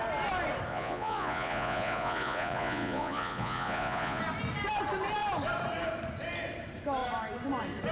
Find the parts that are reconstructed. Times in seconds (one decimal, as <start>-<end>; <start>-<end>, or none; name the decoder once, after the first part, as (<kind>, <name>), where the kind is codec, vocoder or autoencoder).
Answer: 0.7-4.2 (vocoder, Vocos)